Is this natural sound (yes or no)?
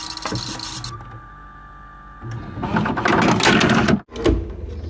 yes